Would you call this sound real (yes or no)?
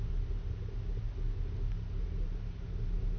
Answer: yes